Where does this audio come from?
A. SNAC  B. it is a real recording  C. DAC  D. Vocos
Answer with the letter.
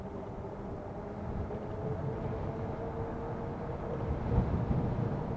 B